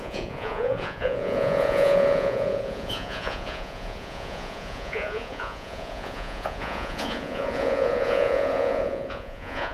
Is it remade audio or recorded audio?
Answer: remade